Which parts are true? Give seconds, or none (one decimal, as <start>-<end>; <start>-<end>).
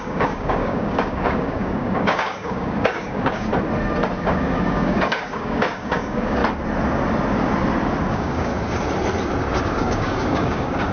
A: 3.5-4.2; 6.4-8.1; 8.5-9.6